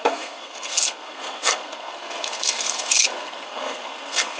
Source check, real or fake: fake